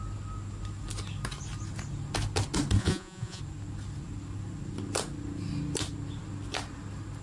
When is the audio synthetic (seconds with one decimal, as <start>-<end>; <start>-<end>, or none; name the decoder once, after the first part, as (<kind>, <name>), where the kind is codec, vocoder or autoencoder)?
2.8-3.4 (vocoder, Vocos)